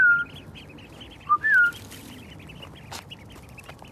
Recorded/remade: recorded